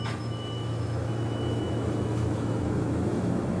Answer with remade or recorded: remade